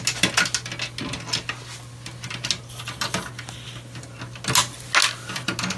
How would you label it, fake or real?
real